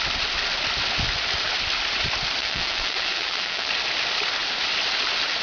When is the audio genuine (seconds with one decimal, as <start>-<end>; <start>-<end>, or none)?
0.0-2.4; 3.7-5.4

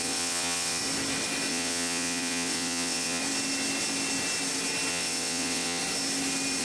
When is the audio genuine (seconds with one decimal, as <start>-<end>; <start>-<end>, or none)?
0.8-1.5; 3.2-4.9; 5.8-6.6

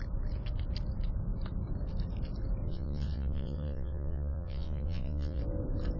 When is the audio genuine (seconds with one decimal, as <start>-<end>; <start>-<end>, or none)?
0.0-2.7; 5.4-6.0

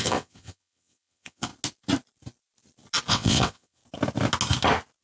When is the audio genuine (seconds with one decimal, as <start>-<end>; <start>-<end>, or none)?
1.5-3.1; 3.8-5.0

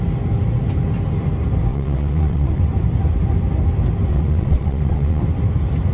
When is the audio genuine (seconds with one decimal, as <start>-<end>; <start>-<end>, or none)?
0.0-1.7; 2.6-4.1; 5.2-5.9